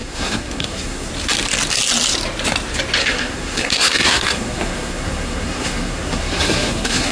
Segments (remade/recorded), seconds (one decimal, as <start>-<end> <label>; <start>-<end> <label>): 0.0-1.1 remade; 1.1-3.0 recorded; 3.0-7.1 remade